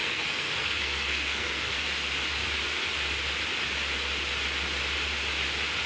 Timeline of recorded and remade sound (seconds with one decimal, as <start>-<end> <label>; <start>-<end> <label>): 0.0-1.9 remade; 1.9-5.9 recorded